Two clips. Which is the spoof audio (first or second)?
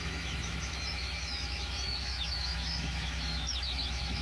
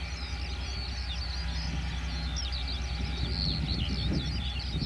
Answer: first